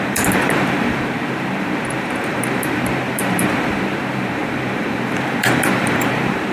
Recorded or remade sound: remade